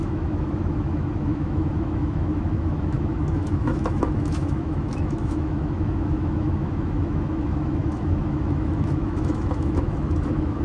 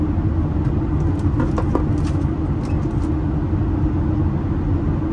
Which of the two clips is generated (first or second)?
first